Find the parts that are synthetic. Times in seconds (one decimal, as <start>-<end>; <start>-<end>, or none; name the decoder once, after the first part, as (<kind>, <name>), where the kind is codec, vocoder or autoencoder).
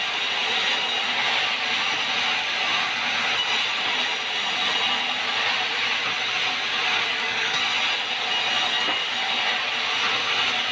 7.1-7.6 (codec, DAC)